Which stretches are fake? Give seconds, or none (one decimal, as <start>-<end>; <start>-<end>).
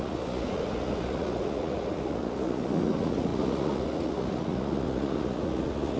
0.0-6.0